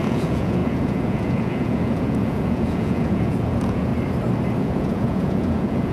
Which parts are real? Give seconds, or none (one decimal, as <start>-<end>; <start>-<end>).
3.9-4.6